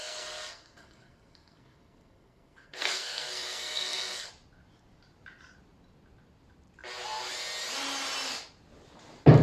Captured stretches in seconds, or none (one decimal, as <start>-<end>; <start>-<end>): 4.3-9.4